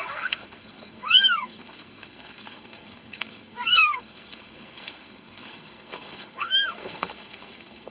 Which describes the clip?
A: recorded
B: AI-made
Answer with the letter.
B